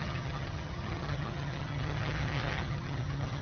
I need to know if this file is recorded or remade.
remade